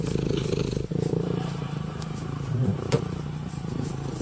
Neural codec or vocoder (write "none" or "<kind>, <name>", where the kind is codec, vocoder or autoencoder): vocoder, BigVGAN v2